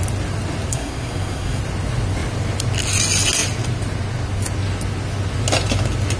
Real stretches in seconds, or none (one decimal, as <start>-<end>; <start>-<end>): 0.0-0.7; 1.6-6.2